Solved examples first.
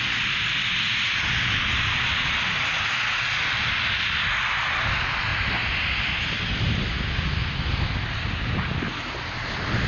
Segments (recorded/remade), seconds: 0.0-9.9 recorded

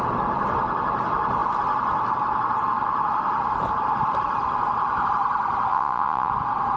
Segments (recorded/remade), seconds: 0.0-5.7 recorded; 5.7-6.3 remade; 6.3-6.8 recorded

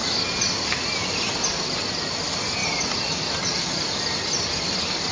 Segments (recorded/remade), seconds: 0.0-5.1 recorded

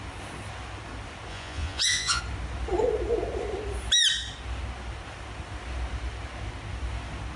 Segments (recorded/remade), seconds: 0.0-1.3 recorded; 1.3-2.2 remade; 2.2-7.4 recorded

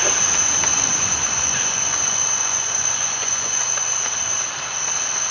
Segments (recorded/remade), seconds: 0.0-0.7 recorded; 0.7-3.9 remade; 3.9-5.3 recorded

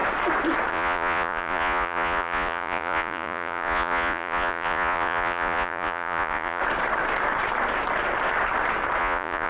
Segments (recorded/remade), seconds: 0.0-0.7 recorded; 0.7-6.6 remade; 6.6-9.0 recorded; 9.0-9.5 remade

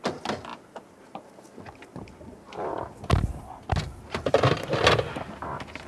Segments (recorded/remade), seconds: 0.0-5.9 recorded

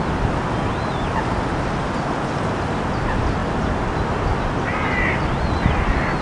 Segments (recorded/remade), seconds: 0.0-6.2 recorded